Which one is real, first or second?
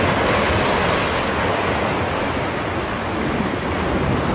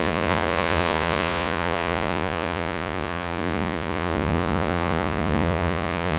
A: first